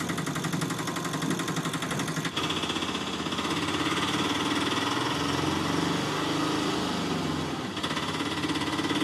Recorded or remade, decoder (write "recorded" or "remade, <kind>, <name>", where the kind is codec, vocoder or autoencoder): recorded